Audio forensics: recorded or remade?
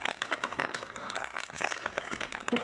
remade